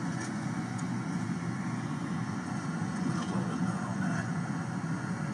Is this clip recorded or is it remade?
remade